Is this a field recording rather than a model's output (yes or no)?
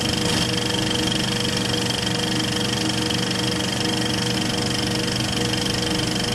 yes